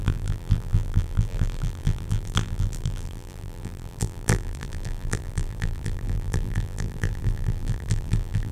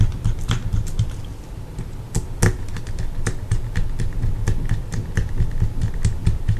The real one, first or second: second